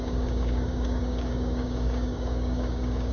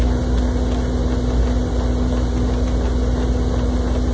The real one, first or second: second